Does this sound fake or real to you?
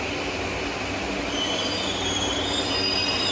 real